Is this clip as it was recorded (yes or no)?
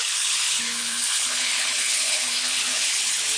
no